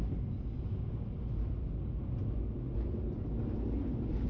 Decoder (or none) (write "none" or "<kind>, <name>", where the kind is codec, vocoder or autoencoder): none